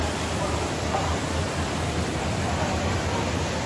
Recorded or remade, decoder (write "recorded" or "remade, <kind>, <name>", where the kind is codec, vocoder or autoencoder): remade, vocoder, BigVGAN v2